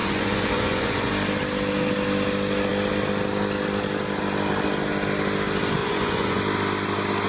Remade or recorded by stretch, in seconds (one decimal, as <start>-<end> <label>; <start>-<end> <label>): 0.0-1.1 remade; 1.1-5.8 recorded; 5.8-6.4 remade; 6.4-7.3 recorded